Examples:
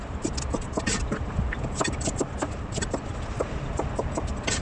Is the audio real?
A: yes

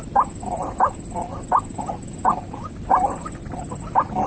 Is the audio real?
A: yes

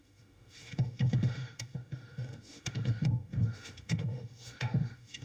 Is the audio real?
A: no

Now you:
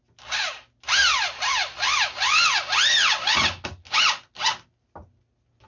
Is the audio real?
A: yes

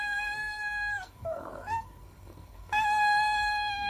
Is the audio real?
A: no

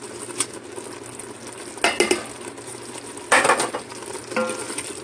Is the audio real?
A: yes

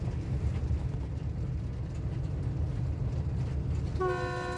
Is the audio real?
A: yes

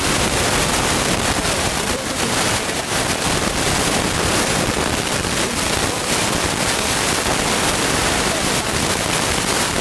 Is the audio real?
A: no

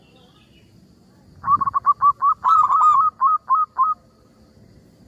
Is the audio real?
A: yes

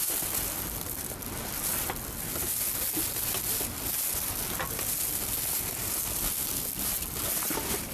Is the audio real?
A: yes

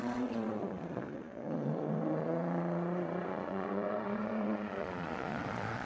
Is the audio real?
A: no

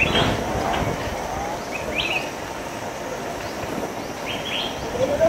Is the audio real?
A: yes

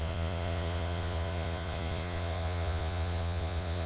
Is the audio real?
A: no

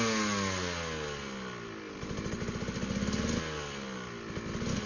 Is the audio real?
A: yes